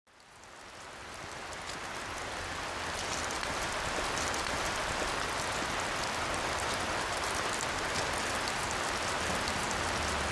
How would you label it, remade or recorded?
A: recorded